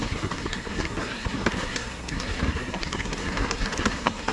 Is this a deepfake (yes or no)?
yes